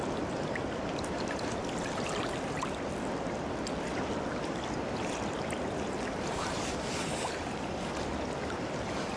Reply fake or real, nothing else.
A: real